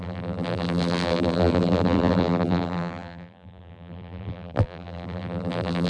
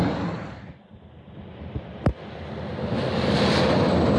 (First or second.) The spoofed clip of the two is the first